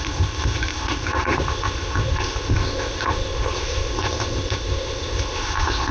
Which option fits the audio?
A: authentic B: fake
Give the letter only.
B